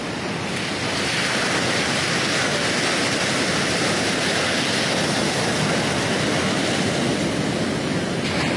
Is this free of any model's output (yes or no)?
yes